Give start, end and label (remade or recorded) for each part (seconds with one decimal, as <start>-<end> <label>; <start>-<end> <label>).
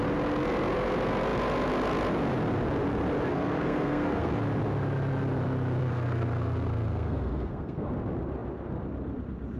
0.0-3.3 recorded; 3.3-4.4 remade; 4.4-5.8 recorded; 5.8-7.9 remade; 7.9-9.6 recorded